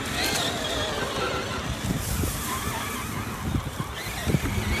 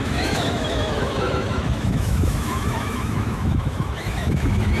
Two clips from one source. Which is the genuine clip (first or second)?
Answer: first